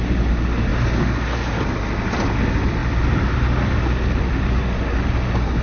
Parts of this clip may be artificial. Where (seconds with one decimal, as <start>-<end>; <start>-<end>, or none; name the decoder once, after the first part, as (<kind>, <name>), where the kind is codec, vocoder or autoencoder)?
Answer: none